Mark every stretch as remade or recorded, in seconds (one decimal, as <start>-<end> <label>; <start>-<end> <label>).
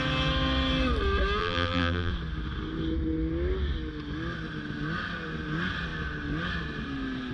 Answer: 0.0-1.4 recorded; 1.4-2.1 remade; 2.1-7.3 recorded